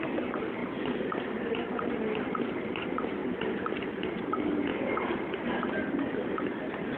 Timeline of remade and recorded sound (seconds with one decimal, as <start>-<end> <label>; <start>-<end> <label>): 0.0-7.0 recorded